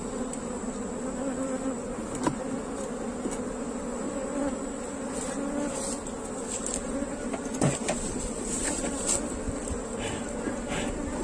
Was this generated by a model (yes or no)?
no